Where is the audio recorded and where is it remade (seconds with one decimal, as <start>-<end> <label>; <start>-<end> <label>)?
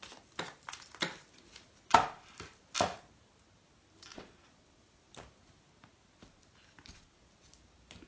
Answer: 0.0-4.1 recorded; 4.1-5.1 remade; 5.1-8.1 recorded